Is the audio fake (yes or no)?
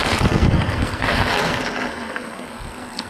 yes